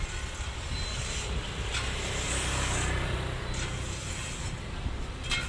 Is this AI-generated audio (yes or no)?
no